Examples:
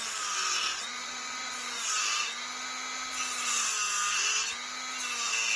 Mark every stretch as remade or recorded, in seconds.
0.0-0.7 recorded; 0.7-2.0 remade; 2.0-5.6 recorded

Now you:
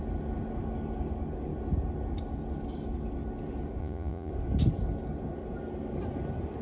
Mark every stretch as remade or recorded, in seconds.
0.0-3.8 recorded; 3.8-4.3 remade; 4.3-6.6 recorded